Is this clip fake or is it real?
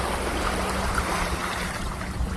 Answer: real